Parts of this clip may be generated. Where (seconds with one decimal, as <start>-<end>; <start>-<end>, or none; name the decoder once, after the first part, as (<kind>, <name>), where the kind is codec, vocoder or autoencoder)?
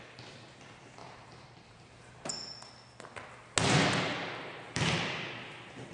1.0-2.3 (vocoder, BigVGAN v2); 4.1-5.3